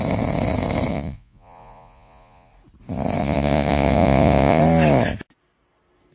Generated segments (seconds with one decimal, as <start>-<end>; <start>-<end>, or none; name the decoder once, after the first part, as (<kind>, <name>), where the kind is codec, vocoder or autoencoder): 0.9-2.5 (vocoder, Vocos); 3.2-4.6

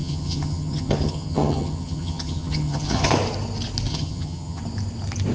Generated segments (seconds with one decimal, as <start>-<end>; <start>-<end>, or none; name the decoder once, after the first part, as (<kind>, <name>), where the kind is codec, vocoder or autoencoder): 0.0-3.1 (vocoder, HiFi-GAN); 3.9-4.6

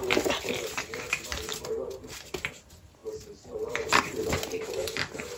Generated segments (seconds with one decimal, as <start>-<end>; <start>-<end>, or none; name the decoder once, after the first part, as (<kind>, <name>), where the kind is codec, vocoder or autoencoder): 0.0-1.5 (vocoder, BigVGAN v2); 2.5-5.4